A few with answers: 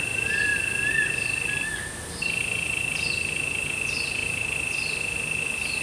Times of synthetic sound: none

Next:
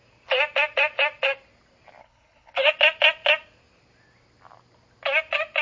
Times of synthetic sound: 2.0-2.7

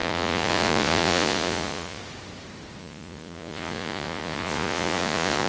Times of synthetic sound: 0.0-2.0; 2.8-5.5

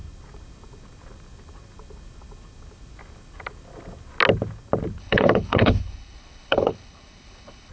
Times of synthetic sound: 5.0-7.7

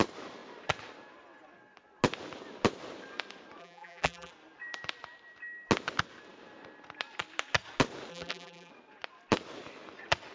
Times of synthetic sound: 3.6-4.3; 8.1-8.7

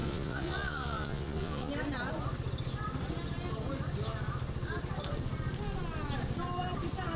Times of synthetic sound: 0.0-1.7

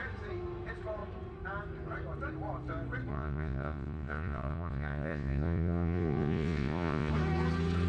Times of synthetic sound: 3.1-7.1